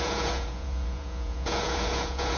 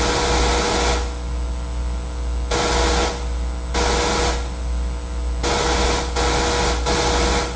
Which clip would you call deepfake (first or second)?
first